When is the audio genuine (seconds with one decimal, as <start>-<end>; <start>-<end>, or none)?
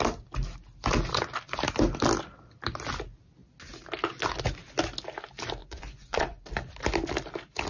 0.0-5.6; 6.4-7.7